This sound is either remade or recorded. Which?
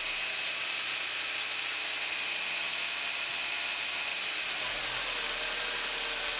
recorded